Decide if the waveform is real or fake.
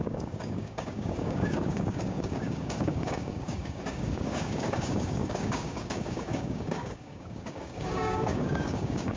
fake